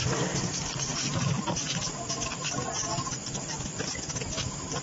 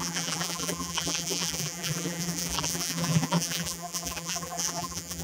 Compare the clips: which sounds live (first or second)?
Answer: first